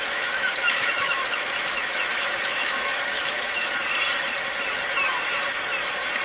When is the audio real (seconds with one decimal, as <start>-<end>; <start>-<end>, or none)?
3.7-6.2